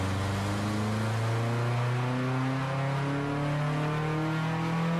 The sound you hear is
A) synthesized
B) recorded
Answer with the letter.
B